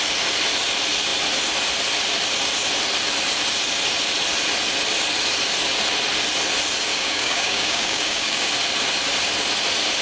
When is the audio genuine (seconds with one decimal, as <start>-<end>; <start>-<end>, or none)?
0.0-6.9; 8.5-10.0